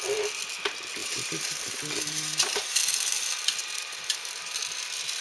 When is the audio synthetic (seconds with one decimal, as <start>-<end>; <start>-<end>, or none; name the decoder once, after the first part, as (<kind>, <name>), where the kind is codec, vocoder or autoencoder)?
1.0-2.9 (vocoder, BigVGAN v2); 3.6-4.6